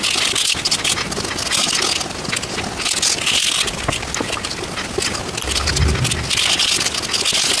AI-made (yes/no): no